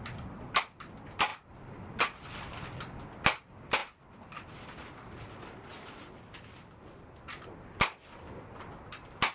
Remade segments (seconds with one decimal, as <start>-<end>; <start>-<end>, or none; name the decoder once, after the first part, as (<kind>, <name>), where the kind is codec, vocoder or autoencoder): 0.0-3.8 (vocoder, BigVGAN v2); 6.8-9.3